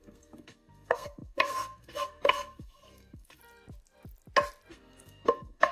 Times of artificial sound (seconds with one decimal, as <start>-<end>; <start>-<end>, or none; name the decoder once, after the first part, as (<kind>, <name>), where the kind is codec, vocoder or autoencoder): 0.0-3.4 (codec, SNAC); 4.7-5.7